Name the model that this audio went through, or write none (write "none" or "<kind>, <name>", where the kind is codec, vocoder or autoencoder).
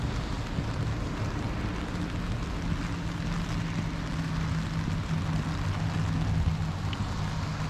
none